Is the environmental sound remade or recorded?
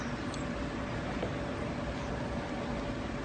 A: recorded